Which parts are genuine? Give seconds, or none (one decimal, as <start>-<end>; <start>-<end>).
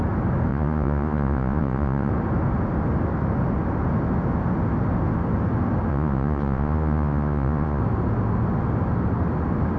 0.0-0.5; 2.1-5.9; 7.8-9.8